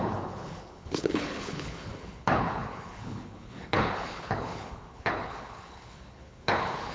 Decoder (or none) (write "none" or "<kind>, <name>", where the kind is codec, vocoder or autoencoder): codec, HILCodec